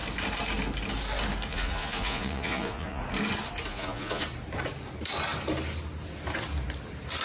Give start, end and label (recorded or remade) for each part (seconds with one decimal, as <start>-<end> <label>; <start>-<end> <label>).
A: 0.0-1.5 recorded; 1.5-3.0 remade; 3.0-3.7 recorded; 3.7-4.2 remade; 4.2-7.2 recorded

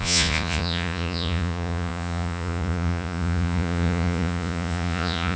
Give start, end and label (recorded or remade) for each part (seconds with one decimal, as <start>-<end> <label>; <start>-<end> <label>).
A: 0.0-5.4 remade

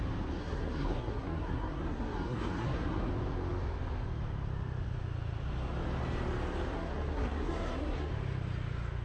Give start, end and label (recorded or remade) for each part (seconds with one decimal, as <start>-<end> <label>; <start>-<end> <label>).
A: 0.0-0.4 recorded; 0.4-3.1 remade; 3.1-6.7 recorded; 6.7-8.1 remade; 8.1-9.0 recorded

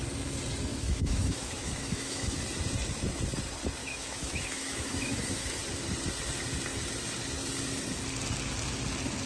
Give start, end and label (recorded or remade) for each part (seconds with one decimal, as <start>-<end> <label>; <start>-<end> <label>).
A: 0.0-0.7 recorded; 0.7-2.4 remade; 2.4-3.8 recorded; 3.8-5.6 remade; 5.6-9.3 recorded

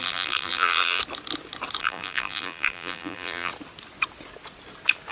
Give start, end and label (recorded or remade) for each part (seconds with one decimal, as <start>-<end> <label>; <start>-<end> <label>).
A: 0.0-1.0 remade; 1.0-1.8 recorded; 1.8-3.5 remade; 3.5-5.1 recorded

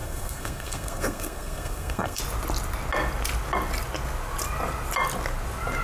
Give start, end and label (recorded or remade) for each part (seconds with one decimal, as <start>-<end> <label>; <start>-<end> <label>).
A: 0.0-2.2 remade; 2.2-5.8 recorded

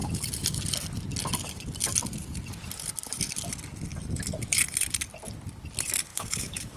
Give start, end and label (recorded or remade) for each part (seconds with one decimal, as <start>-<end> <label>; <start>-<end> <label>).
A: 0.0-6.1 recorded; 6.1-6.8 remade

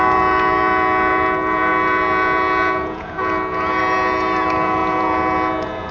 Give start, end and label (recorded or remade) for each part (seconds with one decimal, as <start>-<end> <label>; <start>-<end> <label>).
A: 0.0-5.9 remade